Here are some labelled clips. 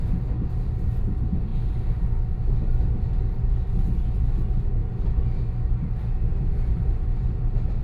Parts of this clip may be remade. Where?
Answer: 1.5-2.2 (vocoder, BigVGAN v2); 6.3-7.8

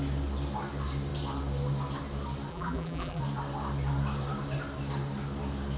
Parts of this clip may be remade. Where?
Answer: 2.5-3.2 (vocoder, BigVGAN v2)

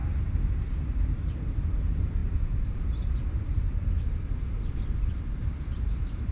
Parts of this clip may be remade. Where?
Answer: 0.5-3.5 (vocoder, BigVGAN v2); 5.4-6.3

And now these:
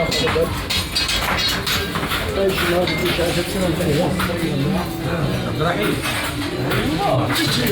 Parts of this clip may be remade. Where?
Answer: none